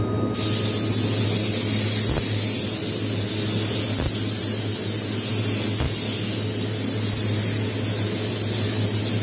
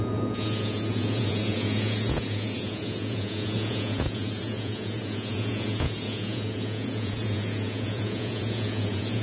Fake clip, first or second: second